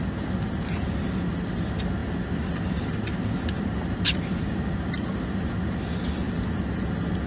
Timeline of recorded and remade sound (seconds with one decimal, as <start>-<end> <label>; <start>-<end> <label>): 0.0-7.3 recorded